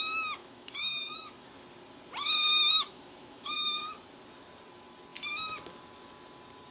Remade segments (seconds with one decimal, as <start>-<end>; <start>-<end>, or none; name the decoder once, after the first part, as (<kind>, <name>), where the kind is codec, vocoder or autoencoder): 0.4-1.5 (autoencoder, DAC-VAE); 2.7-3.8